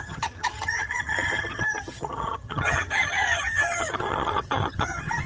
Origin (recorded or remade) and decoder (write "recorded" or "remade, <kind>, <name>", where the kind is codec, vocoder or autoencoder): remade, vocoder, HiFi-GAN